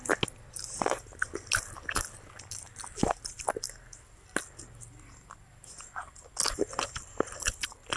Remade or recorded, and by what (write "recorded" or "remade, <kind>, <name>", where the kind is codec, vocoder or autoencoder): recorded